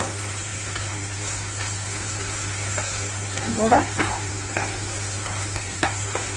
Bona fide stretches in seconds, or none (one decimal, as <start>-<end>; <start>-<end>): none